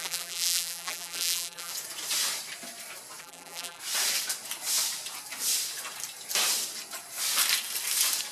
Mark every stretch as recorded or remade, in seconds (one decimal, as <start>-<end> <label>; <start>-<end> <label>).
0.0-1.7 remade; 1.7-3.2 recorded; 3.2-3.8 remade; 3.8-8.3 recorded